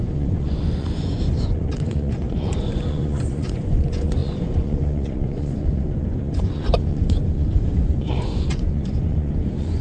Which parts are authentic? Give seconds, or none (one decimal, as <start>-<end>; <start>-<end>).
none